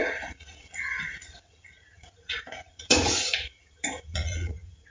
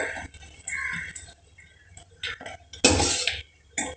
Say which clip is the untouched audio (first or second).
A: second